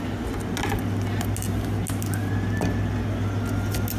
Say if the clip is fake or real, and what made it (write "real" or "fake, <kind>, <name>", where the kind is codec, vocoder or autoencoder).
real